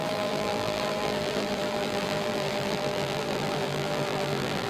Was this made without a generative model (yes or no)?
no